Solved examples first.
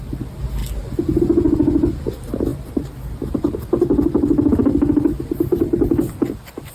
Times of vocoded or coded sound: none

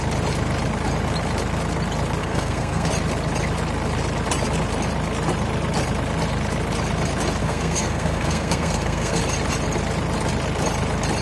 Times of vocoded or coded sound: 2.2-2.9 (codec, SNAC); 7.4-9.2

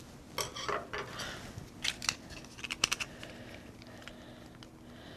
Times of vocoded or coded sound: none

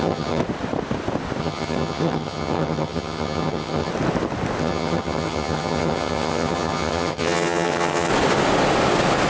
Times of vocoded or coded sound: 0.0-0.4 (vocoder, HiFi-GAN); 1.4-3.9; 4.6-8.1

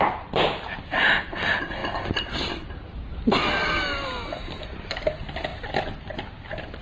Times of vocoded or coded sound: none